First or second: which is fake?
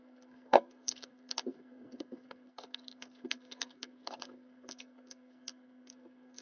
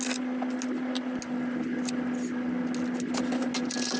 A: first